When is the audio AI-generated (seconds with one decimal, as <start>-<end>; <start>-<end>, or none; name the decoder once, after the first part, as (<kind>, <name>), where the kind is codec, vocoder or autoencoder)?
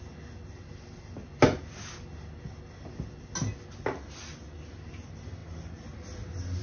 none